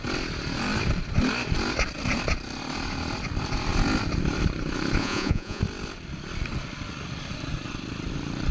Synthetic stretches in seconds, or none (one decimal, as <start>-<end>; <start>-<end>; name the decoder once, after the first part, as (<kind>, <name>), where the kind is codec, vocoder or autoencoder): 5.0-5.6 (vocoder, Vocos)